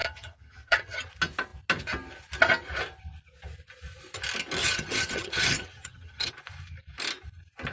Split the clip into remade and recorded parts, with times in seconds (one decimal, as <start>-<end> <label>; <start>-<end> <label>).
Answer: 0.0-1.1 remade; 1.1-4.6 recorded; 4.6-6.3 remade; 6.3-7.7 recorded